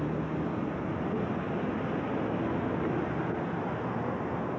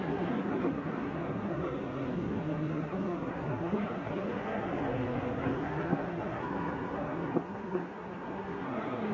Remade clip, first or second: second